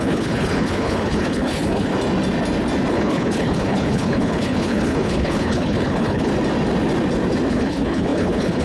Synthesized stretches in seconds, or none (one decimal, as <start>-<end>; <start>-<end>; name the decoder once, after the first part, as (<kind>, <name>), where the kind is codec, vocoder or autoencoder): 0.0-1.9 (codec, HILCodec); 2.9-6.3; 7.5-8.6